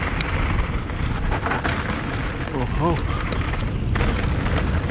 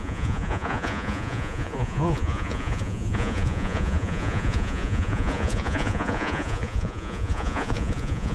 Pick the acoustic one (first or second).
first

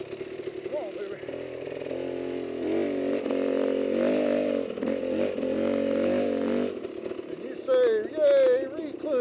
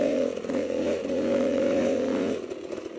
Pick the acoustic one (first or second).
first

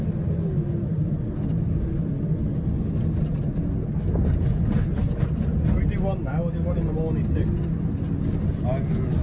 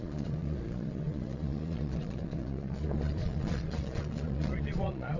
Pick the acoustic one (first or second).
first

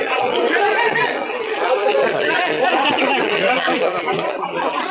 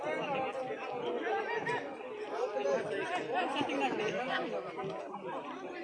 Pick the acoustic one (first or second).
second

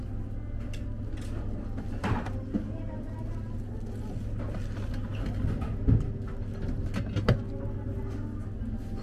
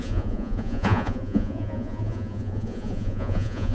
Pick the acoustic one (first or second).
first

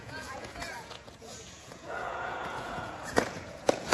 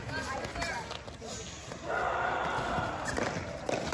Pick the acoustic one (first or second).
second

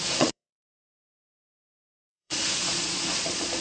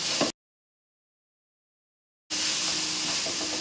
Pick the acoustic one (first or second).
second